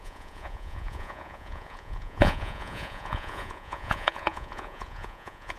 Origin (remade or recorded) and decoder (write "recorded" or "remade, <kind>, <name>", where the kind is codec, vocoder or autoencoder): remade, vocoder, Vocos